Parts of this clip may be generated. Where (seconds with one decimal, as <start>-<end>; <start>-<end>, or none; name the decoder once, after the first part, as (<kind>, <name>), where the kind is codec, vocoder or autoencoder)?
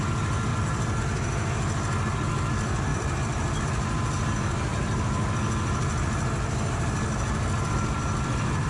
0.5-1.0 (vocoder, BigVGAN v2); 2.9-3.6